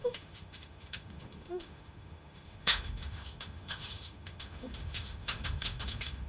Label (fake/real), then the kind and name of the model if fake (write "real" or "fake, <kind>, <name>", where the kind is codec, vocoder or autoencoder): fake, autoencoder, DAC-VAE